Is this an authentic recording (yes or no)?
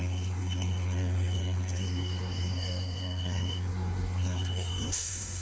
no